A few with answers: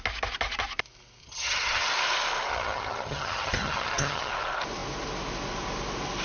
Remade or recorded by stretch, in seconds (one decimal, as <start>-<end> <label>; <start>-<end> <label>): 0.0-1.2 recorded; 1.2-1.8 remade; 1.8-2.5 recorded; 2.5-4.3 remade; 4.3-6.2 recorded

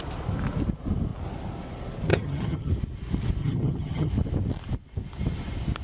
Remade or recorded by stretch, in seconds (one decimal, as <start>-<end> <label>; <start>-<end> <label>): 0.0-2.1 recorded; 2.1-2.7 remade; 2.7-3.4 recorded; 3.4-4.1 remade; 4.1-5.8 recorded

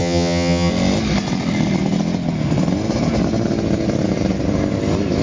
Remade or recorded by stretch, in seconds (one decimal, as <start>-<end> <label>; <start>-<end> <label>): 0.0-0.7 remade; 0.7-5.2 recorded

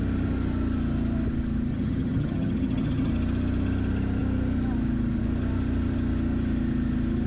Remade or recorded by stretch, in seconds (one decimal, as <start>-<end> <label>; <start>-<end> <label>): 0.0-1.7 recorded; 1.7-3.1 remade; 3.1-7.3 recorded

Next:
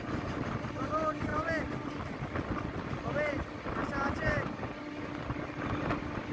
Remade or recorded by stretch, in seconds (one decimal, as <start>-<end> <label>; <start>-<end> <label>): 0.0-6.3 recorded

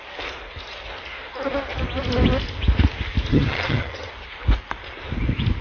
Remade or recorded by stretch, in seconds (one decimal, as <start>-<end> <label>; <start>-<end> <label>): 0.0-3.3 recorded; 3.3-4.1 remade; 4.1-5.6 recorded